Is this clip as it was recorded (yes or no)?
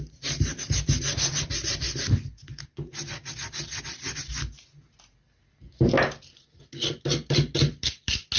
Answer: yes